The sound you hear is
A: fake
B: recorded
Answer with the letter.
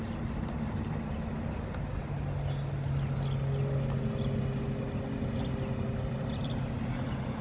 B